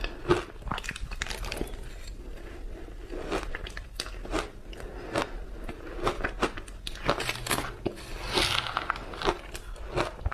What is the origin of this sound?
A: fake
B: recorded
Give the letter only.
B